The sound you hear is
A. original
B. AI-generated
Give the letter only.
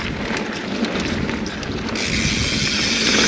A